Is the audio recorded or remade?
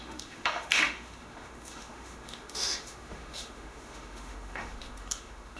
remade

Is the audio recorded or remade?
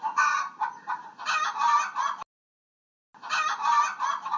recorded